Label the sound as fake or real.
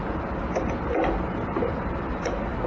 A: fake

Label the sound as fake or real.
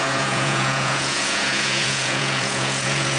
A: fake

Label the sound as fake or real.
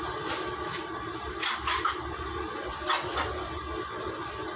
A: real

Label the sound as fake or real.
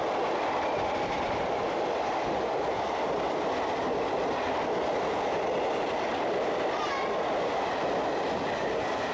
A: real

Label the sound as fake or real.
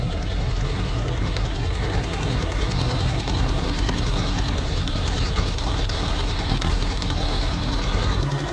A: fake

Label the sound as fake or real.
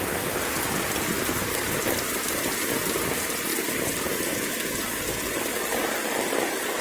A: real